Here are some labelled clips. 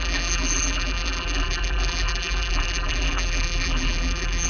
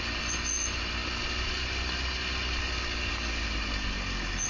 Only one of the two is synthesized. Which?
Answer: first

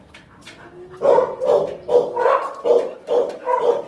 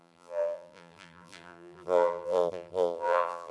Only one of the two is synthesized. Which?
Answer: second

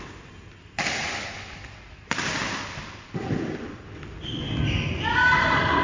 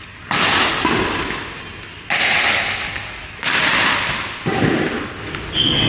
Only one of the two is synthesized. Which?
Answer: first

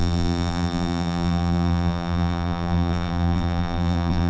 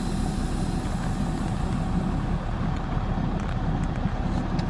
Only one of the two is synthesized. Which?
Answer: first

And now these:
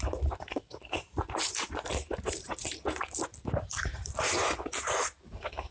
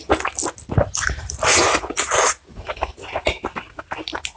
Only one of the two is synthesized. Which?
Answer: first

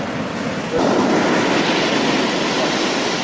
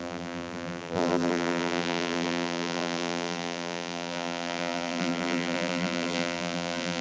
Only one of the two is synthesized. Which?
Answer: second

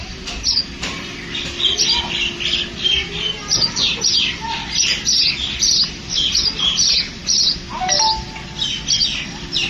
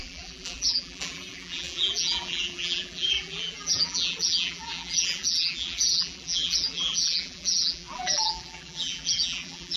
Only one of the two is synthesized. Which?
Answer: second